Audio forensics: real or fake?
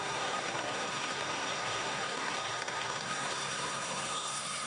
fake